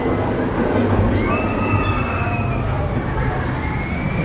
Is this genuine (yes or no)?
yes